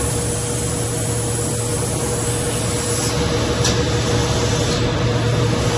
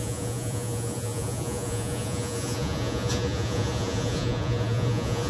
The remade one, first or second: second